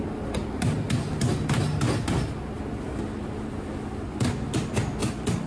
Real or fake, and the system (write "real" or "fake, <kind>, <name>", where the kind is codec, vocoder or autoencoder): real